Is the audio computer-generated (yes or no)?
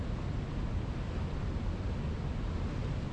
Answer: no